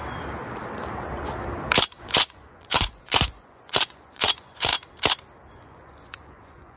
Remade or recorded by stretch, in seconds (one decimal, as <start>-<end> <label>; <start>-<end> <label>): 0.0-2.0 recorded; 2.0-4.7 remade; 4.7-5.5 recorded; 5.5-6.8 remade

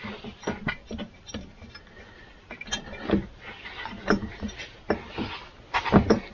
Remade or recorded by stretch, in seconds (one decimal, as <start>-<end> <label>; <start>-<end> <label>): 0.0-6.3 recorded